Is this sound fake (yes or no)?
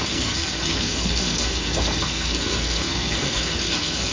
yes